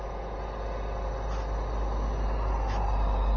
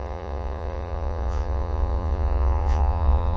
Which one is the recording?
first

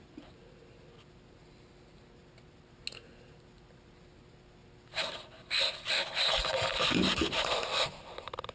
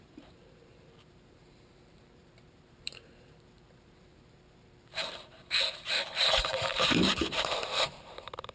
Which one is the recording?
first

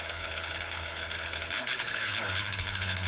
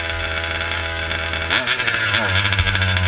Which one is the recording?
second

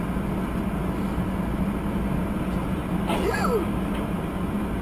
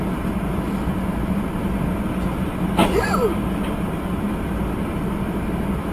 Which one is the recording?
first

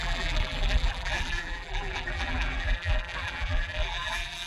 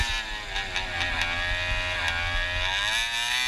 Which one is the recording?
second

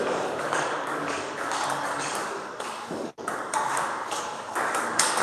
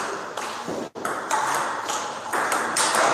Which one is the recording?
second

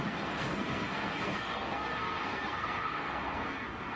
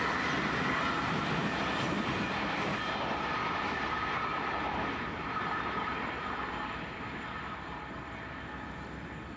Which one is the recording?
second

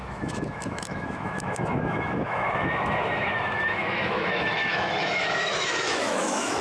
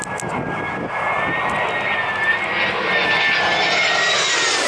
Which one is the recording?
second